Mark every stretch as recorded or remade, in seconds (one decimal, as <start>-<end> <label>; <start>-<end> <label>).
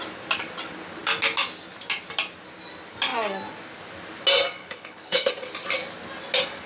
0.0-4.6 recorded; 4.6-5.3 remade; 5.3-6.7 recorded